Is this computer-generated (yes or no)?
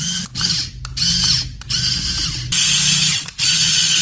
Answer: no